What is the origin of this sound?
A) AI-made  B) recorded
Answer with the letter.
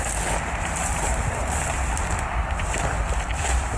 B